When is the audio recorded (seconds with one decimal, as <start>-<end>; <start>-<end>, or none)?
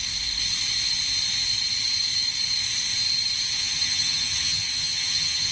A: 0.0-3.6